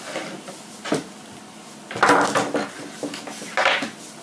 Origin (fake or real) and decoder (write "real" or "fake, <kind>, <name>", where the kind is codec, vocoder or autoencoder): real